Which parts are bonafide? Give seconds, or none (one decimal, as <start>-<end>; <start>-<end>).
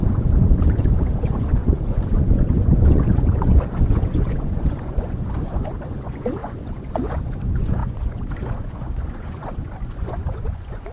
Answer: none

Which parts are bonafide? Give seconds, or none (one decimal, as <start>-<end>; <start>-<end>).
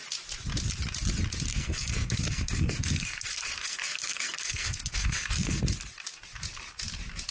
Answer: 0.0-1.5; 5.6-7.3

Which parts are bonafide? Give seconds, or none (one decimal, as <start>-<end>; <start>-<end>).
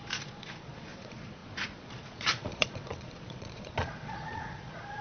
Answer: none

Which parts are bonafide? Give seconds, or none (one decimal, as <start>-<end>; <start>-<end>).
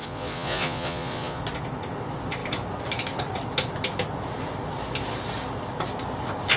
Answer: 1.4-6.6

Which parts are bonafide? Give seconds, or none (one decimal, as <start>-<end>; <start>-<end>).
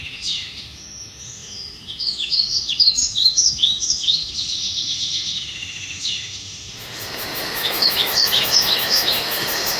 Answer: none